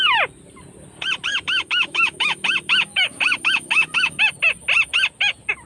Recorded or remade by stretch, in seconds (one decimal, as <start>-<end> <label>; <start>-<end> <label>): 0.0-1.3 recorded; 1.3-4.2 remade; 4.2-5.7 recorded